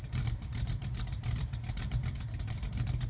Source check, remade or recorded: remade